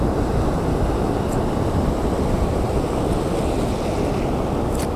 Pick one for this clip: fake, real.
real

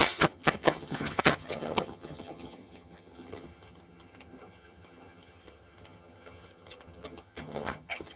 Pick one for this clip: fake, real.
fake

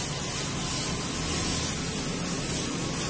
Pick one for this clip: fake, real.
real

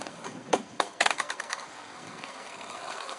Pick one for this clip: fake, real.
fake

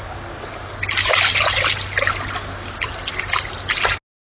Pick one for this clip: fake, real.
real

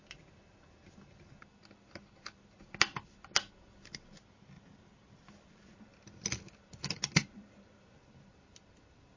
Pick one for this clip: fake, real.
real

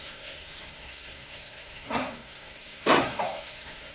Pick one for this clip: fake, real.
fake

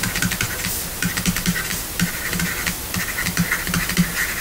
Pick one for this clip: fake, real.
real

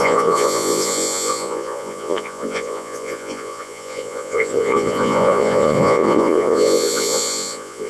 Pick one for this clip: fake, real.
fake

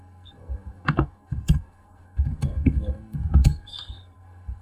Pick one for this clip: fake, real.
fake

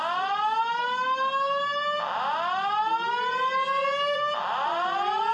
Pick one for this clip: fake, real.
real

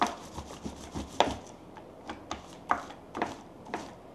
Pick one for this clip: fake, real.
real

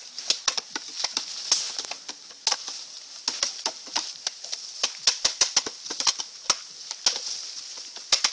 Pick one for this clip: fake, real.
real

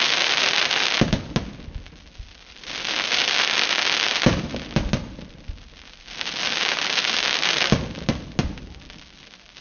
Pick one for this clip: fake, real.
real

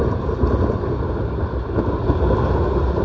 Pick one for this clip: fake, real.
real